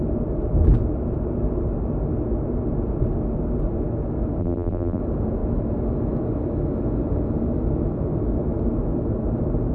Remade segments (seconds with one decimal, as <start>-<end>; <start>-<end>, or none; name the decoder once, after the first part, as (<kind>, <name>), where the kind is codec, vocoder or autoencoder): 4.4-5.0 (vocoder, BigVGAN v2)